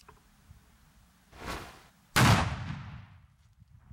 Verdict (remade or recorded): recorded